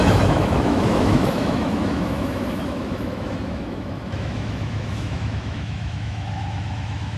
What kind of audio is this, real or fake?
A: fake